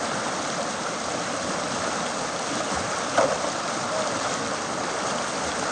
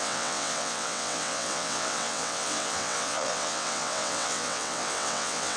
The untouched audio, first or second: first